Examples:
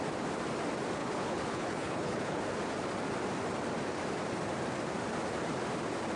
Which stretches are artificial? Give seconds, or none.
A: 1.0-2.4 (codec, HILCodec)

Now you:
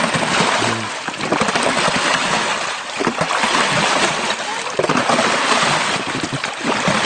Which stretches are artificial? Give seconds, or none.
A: none

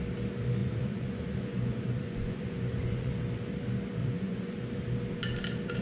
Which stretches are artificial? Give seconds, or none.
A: 0.6-3.1 (vocoder, Vocos); 4.0-4.6

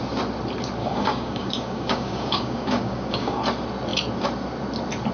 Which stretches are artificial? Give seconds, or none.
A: 0.8-3.4 (codec, DAC)

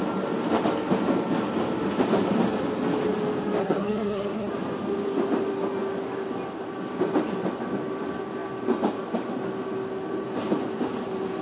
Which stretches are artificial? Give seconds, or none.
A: 3.6-4.5 (codec, SNAC)

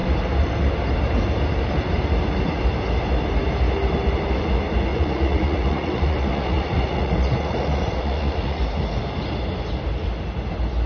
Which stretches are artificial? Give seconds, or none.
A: 4.9-8.6 (vocoder, Vocos)